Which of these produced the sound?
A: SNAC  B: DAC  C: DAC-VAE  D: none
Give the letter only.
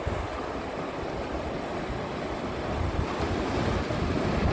D